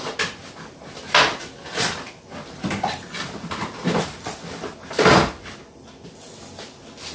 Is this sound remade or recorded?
recorded